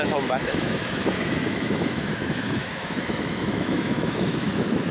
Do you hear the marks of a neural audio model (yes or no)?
yes